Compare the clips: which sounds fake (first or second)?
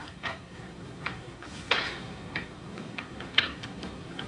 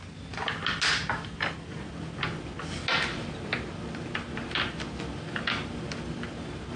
first